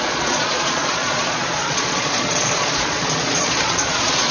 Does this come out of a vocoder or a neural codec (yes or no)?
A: yes